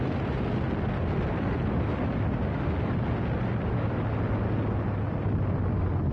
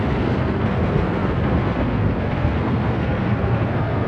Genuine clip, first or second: first